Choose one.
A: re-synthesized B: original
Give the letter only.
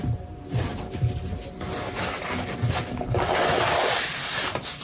B